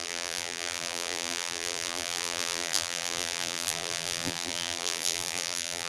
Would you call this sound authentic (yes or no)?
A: no